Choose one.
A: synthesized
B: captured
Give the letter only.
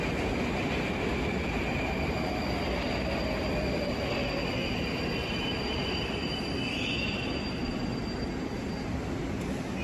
B